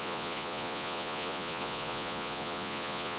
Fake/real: fake